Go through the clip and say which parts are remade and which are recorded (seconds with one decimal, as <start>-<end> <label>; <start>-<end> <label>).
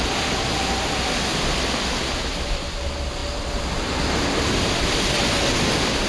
0.0-6.1 recorded